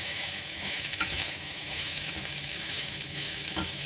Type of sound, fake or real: fake